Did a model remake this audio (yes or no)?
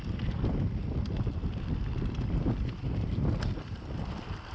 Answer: no